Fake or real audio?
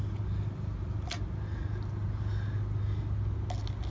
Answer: real